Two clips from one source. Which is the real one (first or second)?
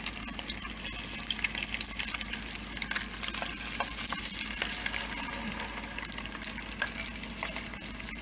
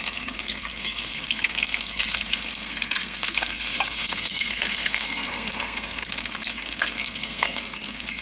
first